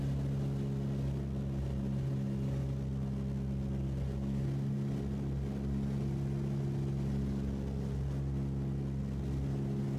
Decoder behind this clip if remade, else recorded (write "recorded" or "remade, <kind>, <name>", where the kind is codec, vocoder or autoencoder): recorded